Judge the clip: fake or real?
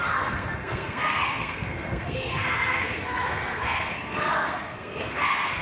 fake